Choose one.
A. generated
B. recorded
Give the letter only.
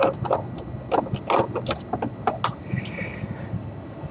B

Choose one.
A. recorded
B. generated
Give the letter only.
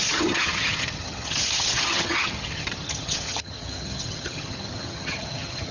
B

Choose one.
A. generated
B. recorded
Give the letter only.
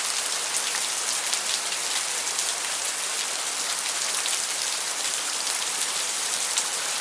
B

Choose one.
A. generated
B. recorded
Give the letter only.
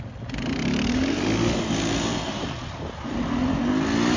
B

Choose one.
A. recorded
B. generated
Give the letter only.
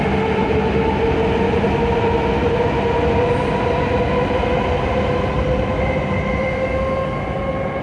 A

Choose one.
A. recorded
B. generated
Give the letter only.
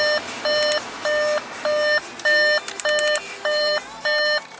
A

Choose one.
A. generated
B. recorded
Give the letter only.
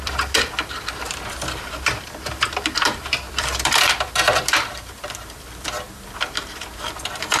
A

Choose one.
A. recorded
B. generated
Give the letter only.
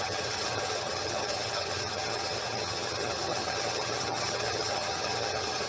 B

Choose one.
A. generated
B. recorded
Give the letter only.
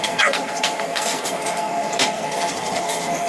A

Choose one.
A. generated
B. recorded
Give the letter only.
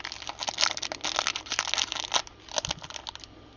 B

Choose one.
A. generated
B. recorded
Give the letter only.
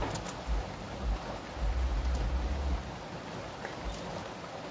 B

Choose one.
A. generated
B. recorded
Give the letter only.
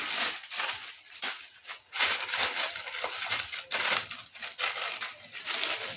B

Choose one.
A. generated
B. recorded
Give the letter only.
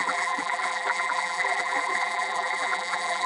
A